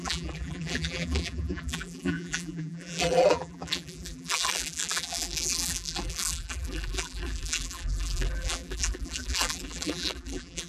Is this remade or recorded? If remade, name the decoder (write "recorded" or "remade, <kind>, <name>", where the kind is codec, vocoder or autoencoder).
remade, vocoder, BigVGAN v2